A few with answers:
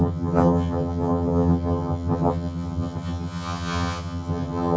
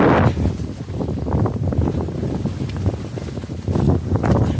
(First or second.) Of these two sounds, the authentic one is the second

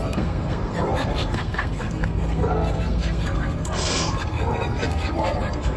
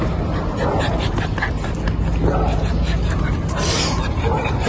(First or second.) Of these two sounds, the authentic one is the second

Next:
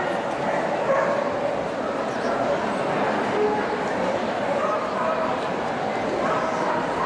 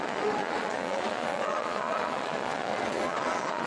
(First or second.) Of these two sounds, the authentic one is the first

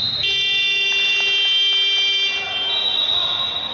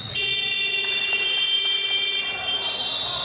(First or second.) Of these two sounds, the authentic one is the first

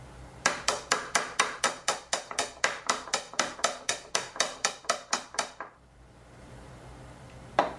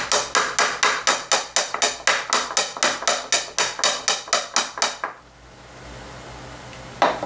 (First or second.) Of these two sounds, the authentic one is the second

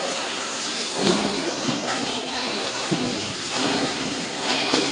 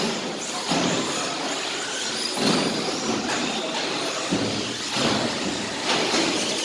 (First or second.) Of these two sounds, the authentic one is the second